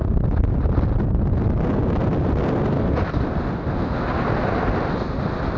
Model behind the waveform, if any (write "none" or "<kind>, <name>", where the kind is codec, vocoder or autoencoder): none